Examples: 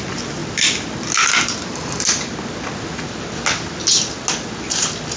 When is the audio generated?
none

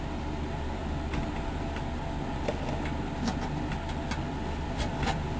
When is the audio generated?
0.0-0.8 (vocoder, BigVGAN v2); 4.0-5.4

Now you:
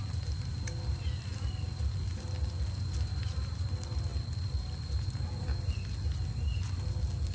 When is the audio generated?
none

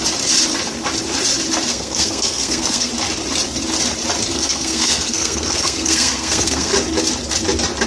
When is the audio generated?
1.7-2.9 (codec, SNAC); 4.3-6.7

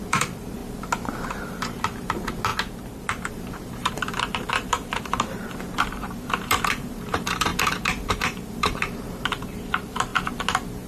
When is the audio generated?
0.0-0.6 (vocoder, BigVGAN v2); 1.4-2.5; 3.3-10.1

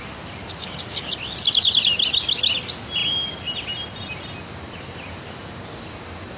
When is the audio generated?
0.6-1.1 (codec, DAC)

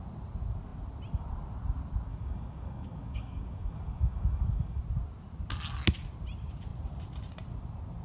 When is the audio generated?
2.1-4.8 (codec, DAC)

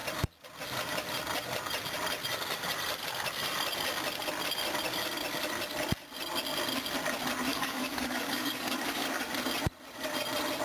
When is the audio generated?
7.5-9.2 (codec, DAC)